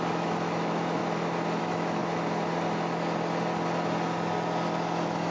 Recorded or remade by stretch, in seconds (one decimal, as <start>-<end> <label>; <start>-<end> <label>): 0.0-1.0 remade; 1.0-1.6 recorded; 1.6-2.0 remade; 2.0-5.3 recorded

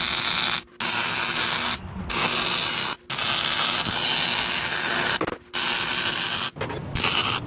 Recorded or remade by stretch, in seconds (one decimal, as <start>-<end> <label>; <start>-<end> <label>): 0.0-7.5 recorded

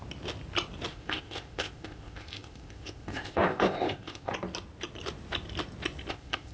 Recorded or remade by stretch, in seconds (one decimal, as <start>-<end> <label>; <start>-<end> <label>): 0.0-0.9 recorded; 0.9-4.3 remade; 4.3-6.1 recorded; 6.1-6.5 remade

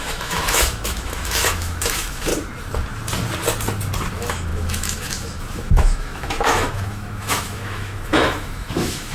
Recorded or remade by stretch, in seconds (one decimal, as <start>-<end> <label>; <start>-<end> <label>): 0.0-2.3 remade; 2.3-4.1 recorded; 4.1-9.1 remade

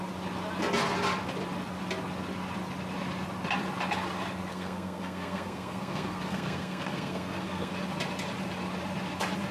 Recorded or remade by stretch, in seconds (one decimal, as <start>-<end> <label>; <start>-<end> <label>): 0.0-4.5 recorded; 4.5-7.7 remade; 7.7-9.5 recorded